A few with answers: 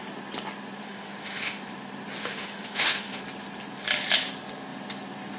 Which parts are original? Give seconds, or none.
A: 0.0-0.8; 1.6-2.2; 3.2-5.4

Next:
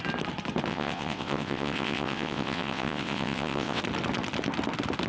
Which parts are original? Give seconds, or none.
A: 0.0-0.7; 3.8-5.1